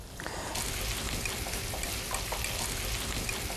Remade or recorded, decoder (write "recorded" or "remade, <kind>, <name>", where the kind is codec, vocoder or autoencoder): recorded